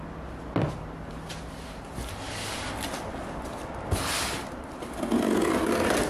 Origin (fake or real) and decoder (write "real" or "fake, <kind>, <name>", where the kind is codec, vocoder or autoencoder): real